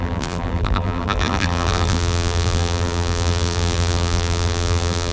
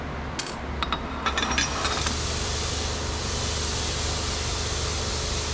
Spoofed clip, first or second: first